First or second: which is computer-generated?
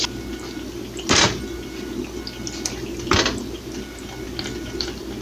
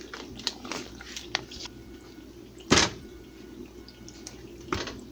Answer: second